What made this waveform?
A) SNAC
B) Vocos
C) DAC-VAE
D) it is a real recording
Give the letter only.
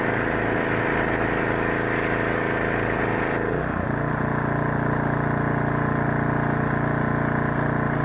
D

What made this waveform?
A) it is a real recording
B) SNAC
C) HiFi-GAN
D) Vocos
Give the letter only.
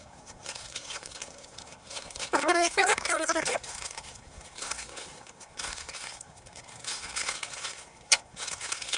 B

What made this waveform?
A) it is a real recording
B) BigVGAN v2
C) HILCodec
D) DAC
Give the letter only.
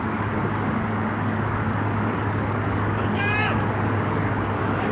D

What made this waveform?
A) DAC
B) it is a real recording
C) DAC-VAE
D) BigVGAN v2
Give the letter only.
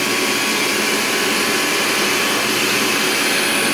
B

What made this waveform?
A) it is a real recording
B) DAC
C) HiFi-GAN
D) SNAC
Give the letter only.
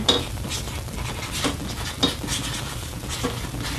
A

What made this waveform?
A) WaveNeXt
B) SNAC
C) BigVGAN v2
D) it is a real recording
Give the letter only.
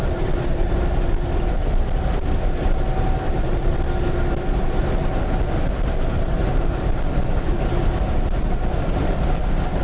D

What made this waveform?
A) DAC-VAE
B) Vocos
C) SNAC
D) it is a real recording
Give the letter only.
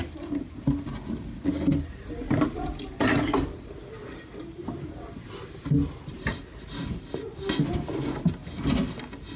D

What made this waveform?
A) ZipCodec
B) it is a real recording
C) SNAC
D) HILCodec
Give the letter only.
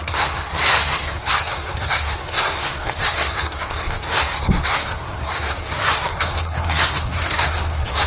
C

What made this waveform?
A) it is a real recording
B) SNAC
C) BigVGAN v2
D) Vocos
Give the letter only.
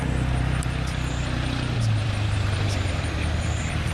C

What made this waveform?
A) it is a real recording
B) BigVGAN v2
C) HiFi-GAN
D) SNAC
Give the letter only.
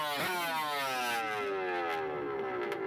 A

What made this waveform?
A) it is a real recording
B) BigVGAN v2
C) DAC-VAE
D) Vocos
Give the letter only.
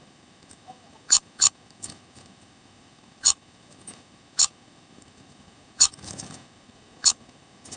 C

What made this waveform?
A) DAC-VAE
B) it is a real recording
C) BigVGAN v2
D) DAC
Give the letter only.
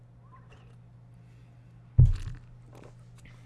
B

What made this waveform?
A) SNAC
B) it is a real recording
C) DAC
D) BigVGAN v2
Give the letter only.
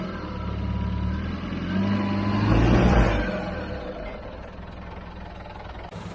B